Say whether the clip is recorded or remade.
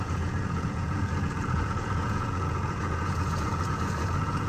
remade